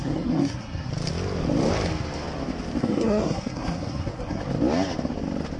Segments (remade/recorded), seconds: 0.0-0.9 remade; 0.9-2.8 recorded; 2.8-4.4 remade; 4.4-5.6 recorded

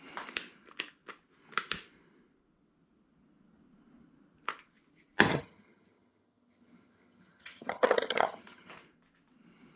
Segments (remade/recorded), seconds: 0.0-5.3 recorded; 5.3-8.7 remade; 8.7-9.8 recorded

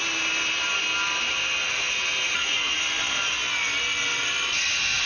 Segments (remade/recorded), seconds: 0.0-1.6 recorded; 1.6-2.8 remade; 2.8-5.1 recorded